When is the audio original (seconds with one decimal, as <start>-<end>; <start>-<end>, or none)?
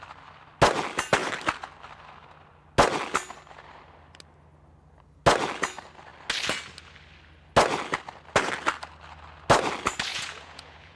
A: 0.0-10.1